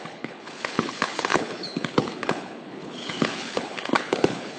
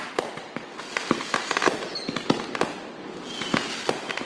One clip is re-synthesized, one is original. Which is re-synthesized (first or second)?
first